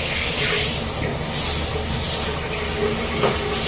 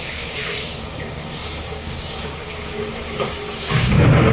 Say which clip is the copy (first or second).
second